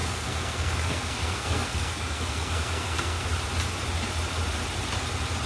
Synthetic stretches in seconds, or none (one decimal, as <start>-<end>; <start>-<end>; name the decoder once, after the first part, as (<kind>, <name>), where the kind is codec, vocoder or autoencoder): 0.0-3.3 (codec, SNAC)